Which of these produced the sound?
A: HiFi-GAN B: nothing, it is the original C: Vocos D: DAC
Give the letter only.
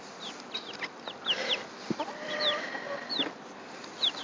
B